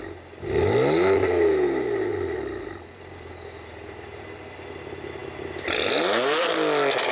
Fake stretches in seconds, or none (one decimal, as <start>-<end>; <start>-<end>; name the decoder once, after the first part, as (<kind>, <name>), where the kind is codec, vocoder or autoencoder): 2.1-3.3 (vocoder, BigVGAN v2)